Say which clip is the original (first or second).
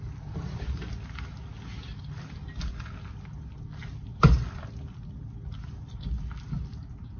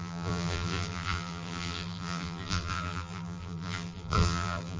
first